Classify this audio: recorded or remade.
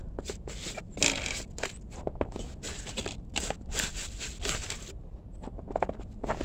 recorded